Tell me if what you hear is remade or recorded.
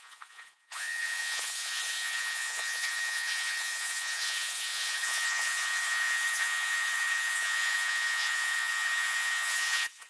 remade